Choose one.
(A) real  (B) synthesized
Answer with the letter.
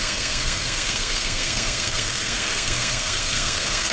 B